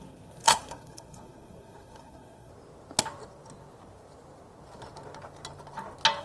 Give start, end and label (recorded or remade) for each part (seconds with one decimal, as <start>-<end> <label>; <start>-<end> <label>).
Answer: 0.0-2.5 remade; 2.5-6.2 recorded